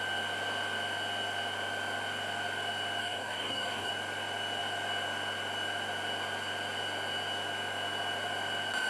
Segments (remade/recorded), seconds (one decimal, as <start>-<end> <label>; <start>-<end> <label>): 0.0-3.0 recorded; 3.0-3.9 remade; 3.9-8.9 recorded